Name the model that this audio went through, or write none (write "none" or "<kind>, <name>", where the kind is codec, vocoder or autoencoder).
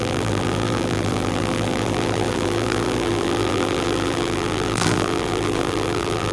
vocoder, BigVGAN v2